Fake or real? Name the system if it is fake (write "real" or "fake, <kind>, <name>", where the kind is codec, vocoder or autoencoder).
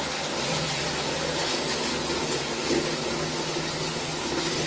real